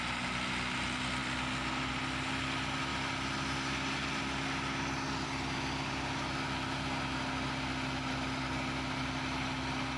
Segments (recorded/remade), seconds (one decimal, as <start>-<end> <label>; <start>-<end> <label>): 0.0-10.0 recorded